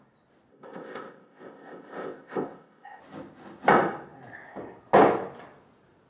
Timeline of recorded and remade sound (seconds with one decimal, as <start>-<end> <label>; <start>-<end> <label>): 0.0-0.5 recorded; 0.5-3.0 remade; 3.0-6.1 recorded